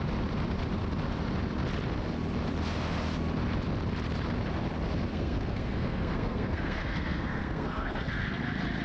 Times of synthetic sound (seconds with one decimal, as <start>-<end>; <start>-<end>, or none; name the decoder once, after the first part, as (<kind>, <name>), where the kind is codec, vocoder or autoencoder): 5.1-8.4 (codec, SNAC)